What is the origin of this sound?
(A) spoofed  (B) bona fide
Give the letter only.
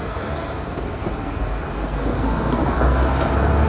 A